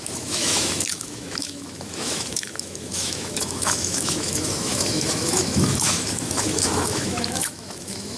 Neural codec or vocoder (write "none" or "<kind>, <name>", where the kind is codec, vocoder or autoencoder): autoencoder, DAC-VAE